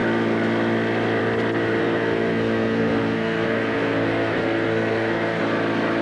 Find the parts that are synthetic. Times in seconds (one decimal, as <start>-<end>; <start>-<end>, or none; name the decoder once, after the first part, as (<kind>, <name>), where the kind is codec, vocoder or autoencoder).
1.8-5.4 (codec, SNAC)